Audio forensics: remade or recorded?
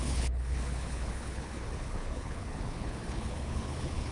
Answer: remade